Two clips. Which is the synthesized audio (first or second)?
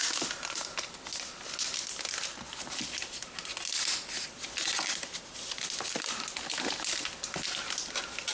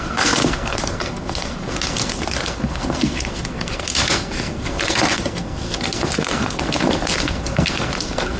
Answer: second